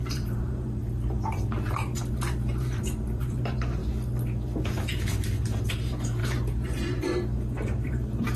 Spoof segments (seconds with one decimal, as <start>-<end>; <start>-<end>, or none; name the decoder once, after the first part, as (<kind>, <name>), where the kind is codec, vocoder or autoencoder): 0.0-3.8 (vocoder, BigVGAN v2); 4.9-8.4